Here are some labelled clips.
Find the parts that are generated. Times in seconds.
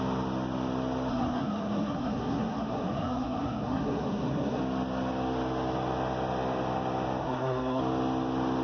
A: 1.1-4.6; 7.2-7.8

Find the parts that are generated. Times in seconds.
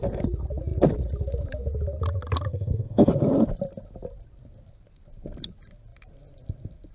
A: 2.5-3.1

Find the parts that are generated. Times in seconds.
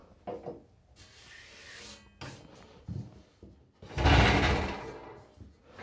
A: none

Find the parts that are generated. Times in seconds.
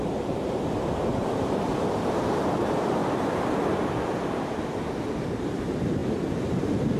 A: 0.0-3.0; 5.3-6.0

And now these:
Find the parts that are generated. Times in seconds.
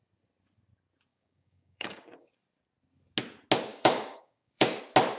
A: 1.1-2.3; 3.7-4.8